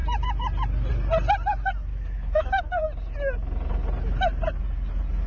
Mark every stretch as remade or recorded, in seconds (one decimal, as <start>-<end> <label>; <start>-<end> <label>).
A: 0.0-1.9 recorded; 1.9-2.6 remade; 2.6-5.3 recorded